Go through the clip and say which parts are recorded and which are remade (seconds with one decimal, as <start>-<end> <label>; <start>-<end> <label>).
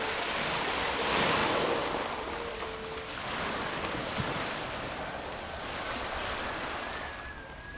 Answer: 0.0-7.8 recorded